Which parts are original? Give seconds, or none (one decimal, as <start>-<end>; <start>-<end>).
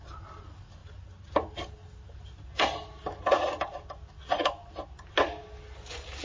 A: 0.0-6.2